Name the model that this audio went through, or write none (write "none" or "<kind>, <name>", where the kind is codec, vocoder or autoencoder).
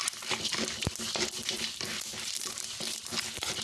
none